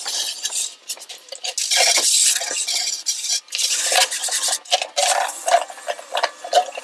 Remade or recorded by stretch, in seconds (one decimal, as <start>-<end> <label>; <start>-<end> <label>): 0.0-6.8 recorded